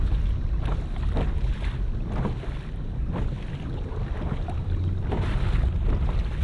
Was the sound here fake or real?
real